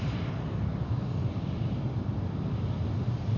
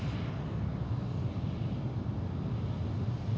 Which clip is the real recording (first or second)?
second